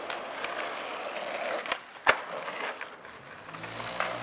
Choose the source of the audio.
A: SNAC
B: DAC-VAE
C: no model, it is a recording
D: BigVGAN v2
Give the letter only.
C